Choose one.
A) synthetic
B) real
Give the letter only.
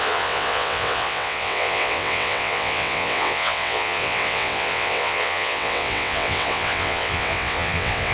A